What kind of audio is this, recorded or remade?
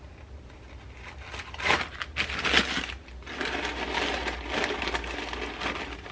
recorded